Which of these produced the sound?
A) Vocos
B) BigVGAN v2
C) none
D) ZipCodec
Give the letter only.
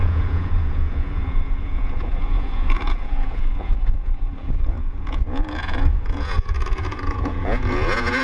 A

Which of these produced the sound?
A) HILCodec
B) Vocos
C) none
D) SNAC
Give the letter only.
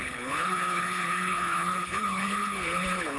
A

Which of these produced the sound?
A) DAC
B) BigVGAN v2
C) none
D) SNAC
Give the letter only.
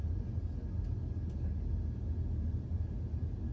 C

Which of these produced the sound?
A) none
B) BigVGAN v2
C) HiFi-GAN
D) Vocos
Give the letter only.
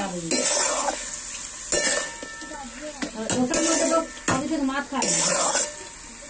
A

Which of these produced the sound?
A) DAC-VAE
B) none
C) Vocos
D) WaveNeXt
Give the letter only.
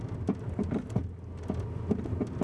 B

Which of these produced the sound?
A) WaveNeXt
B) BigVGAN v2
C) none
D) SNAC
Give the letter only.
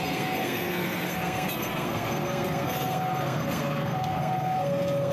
D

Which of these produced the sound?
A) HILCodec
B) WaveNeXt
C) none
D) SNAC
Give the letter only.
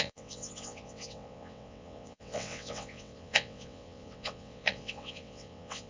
B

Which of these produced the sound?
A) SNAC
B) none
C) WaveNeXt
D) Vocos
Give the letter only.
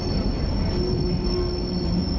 B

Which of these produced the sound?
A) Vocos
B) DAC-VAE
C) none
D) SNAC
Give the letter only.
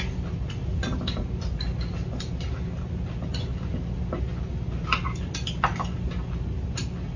C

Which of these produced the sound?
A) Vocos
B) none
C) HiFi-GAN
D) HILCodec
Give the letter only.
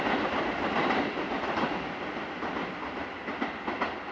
B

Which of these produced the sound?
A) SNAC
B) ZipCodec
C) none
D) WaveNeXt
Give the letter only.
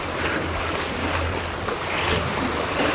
C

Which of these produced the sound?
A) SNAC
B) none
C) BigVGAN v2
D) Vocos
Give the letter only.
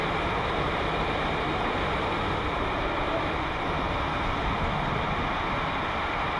B